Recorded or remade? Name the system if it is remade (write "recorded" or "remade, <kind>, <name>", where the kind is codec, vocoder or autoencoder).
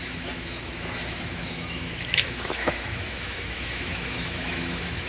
remade, autoencoder, DAC-VAE